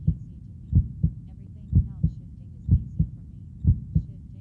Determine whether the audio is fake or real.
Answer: real